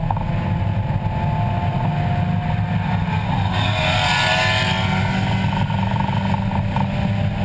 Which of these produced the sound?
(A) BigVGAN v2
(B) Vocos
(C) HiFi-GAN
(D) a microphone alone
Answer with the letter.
D